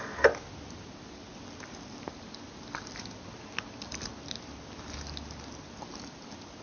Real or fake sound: real